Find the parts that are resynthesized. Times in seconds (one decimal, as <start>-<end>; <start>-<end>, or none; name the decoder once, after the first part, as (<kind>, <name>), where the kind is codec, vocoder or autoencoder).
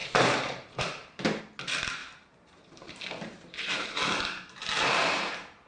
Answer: 0.0-1.4 (vocoder, BigVGAN v2); 2.0-5.7